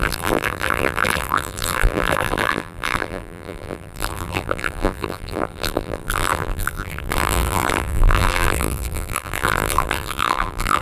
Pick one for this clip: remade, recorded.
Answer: remade